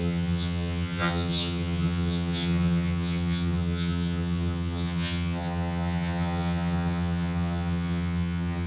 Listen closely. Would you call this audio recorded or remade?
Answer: remade